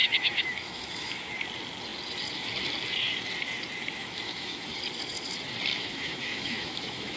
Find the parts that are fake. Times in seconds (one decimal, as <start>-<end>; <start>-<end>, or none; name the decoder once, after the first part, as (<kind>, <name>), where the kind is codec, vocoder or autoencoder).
0.0-1.3 (autoencoder, DAC-VAE); 4.0-4.7; 5.7-7.2